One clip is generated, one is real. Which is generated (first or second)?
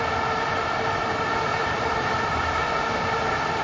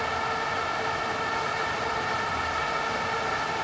first